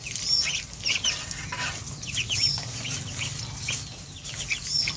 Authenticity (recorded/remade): recorded